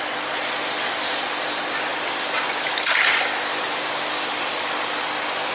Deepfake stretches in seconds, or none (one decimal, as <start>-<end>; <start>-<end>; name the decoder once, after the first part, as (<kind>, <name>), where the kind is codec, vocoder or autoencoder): none